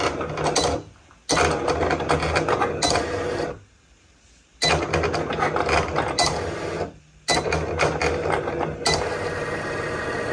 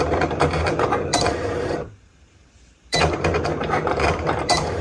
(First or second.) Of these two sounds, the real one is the first